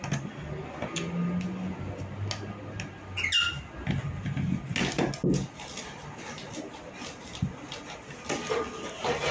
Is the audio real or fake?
real